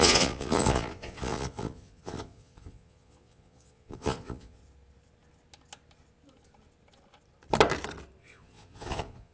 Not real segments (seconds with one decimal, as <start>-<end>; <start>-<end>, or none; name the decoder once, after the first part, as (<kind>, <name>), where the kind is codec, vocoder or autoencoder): 0.0-4.6 (vocoder, Vocos); 8.2-9.3